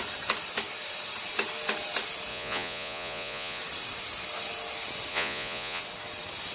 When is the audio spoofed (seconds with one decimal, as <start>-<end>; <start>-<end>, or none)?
2.3-3.6; 5.1-5.8